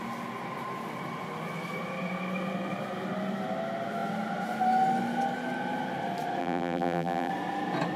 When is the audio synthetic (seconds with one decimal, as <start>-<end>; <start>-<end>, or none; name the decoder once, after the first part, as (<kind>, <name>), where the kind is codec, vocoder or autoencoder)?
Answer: 6.4-7.3 (vocoder, BigVGAN v2)